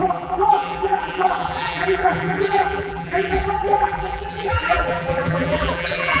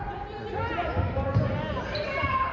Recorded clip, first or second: second